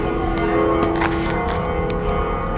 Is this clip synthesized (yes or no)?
no